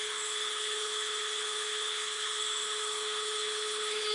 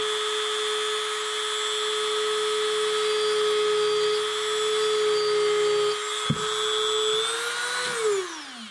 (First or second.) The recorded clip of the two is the second